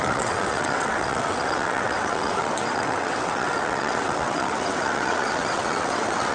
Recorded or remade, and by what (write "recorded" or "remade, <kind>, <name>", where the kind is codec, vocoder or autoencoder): remade, vocoder, WaveNeXt